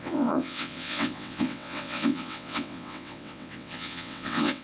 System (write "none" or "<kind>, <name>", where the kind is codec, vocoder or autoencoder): vocoder, WaveNeXt